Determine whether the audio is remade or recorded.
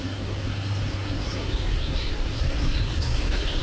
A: remade